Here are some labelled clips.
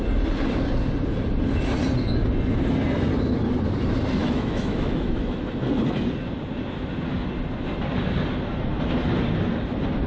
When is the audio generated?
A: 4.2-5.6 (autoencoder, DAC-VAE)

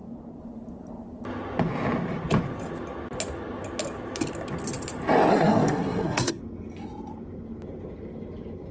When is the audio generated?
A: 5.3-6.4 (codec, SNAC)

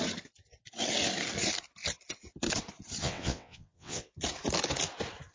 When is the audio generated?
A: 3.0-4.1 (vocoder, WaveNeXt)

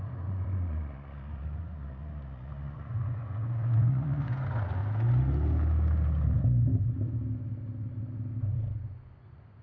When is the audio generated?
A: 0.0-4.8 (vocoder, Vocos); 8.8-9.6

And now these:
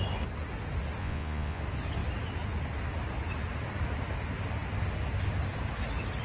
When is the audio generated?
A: 1.0-1.6 (vocoder, Vocos)

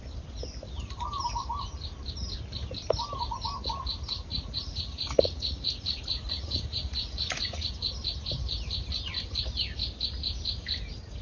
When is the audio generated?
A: 4.3-7.7 (vocoder, Vocos)